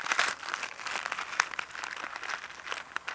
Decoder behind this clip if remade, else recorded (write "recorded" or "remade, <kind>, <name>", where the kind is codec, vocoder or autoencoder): recorded